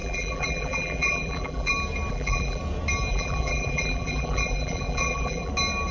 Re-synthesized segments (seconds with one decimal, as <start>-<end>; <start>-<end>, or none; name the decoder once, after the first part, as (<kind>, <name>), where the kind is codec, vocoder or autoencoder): 0.0-1.7 (vocoder, BigVGAN v2); 2.1-2.6; 3.1-5.5